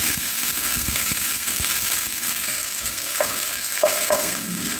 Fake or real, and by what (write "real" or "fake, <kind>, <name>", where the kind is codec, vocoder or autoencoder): fake, codec, SNAC